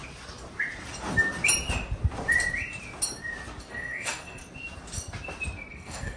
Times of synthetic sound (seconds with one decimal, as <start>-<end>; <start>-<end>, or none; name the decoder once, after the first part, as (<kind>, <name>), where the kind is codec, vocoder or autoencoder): 3.7-4.4 (codec, SNAC); 5.7-6.2